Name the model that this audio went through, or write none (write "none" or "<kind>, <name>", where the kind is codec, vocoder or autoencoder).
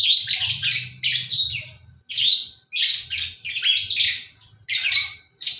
none